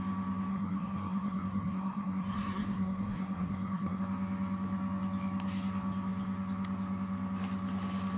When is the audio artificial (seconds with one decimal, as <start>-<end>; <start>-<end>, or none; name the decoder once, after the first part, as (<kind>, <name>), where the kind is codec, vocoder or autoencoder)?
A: 0.5-4.0 (codec, SNAC)